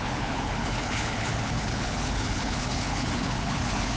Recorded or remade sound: remade